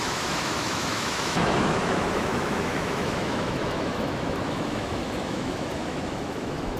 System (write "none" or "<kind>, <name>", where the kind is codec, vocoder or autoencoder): autoencoder, DAC-VAE